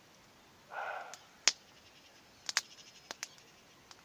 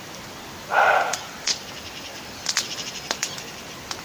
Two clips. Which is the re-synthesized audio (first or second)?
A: second